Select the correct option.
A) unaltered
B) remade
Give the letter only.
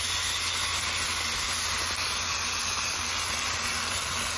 A